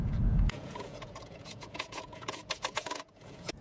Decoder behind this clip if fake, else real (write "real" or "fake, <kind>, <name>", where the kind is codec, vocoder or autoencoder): fake, vocoder, Vocos